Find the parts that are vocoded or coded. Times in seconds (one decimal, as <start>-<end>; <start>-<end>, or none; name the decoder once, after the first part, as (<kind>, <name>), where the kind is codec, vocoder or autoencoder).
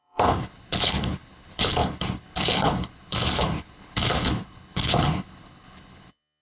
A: 0.0-6.4 (codec, HILCodec)